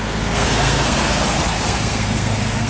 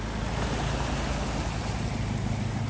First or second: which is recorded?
second